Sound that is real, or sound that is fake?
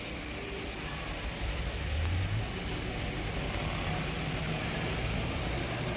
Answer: real